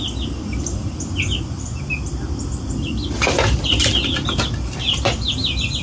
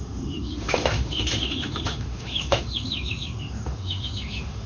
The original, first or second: first